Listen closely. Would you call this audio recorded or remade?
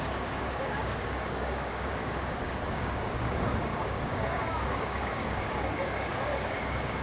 remade